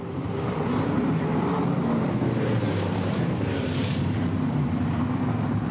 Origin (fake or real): fake